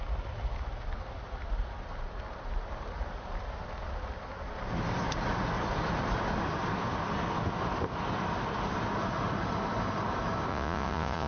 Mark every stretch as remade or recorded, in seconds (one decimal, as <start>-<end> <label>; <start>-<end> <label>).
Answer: 0.0-10.5 recorded; 10.5-11.3 remade